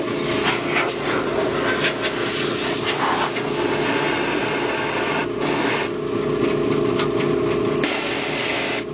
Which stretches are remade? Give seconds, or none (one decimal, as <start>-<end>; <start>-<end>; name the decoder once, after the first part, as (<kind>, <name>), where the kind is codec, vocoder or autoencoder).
none